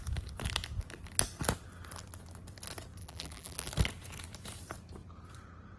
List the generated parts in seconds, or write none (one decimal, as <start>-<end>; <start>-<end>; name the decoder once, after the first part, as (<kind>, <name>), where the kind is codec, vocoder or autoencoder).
3.0-3.7 (vocoder, BigVGAN v2)